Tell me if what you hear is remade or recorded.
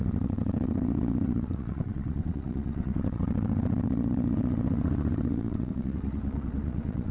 remade